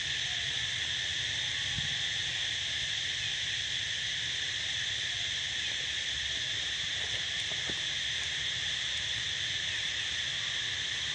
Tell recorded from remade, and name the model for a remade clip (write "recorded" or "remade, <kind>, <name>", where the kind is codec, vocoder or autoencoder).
recorded